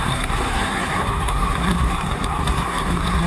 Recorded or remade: remade